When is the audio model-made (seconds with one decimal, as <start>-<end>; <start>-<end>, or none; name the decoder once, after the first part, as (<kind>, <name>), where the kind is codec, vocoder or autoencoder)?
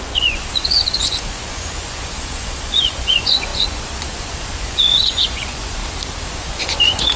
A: 0.0-5.8 (vocoder, Vocos); 6.3-7.2